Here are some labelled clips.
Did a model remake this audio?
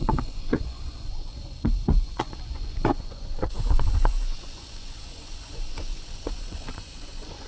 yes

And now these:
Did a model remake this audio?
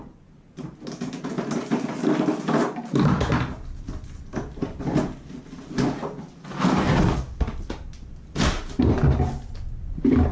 no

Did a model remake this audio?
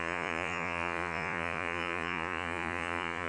yes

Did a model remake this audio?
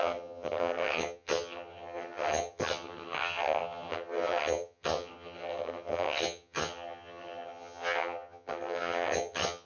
yes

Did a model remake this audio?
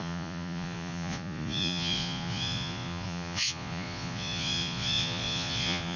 yes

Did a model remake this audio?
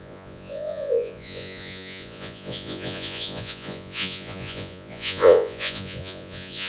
yes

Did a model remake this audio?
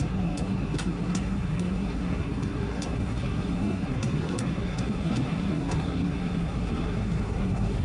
yes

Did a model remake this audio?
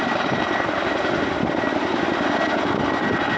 no